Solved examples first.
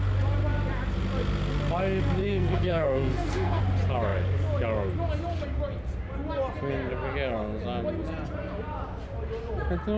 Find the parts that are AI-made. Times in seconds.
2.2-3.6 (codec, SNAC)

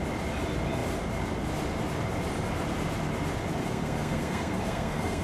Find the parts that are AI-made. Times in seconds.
3.6-5.2 (codec, SNAC)